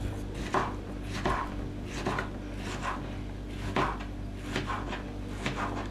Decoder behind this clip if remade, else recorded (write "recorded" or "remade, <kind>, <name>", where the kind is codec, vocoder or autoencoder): recorded